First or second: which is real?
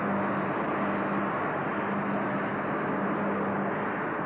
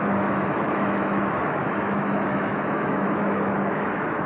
first